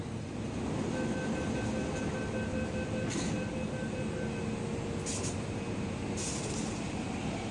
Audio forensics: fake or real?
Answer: real